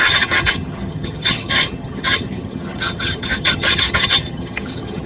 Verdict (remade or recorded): remade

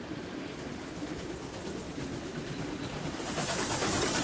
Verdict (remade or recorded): recorded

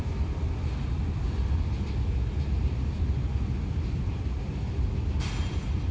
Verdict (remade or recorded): recorded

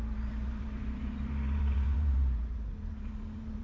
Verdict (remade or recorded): remade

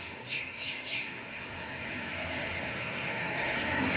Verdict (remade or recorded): remade